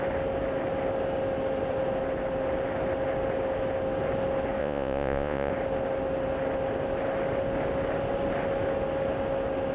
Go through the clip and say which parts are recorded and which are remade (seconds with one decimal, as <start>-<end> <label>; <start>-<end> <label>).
0.0-4.6 recorded; 4.6-5.5 remade; 5.5-9.7 recorded